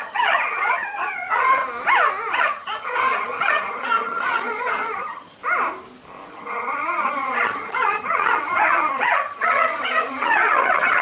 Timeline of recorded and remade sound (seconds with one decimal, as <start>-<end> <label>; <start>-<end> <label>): 0.0-1.6 remade; 1.6-2.4 recorded; 2.4-5.4 remade; 5.4-6.3 recorded; 6.3-11.0 remade